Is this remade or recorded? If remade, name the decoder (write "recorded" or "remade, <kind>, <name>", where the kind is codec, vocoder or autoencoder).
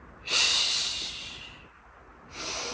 recorded